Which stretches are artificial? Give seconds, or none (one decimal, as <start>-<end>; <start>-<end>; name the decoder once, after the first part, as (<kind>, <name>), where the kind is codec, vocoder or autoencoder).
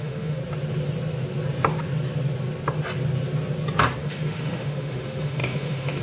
0.0-0.4 (autoencoder, DAC-VAE); 4.0-6.0